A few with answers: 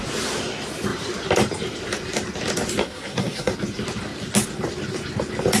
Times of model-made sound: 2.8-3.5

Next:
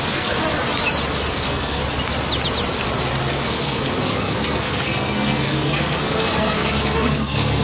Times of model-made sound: 0.0-0.4; 1.3-1.8; 3.3-7.6

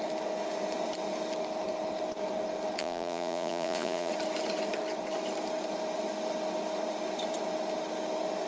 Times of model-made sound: 2.8-4.1

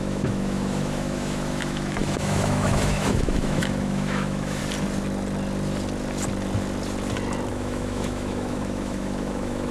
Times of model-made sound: 0.0-4.6; 7.5-9.7

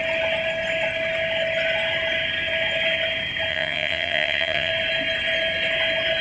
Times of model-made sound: 3.5-4.7